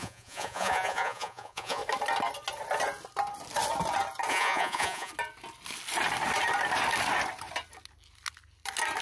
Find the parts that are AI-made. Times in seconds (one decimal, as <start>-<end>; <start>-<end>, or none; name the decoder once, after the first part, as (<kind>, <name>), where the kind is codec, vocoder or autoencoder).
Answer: 0.0-1.8 (vocoder, Vocos); 4.3-5.1